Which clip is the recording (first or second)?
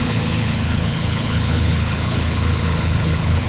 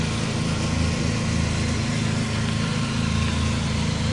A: second